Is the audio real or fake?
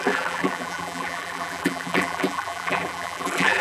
fake